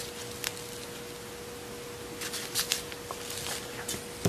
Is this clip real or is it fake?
real